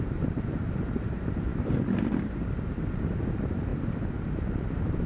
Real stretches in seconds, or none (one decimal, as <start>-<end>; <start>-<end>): 3.7-4.5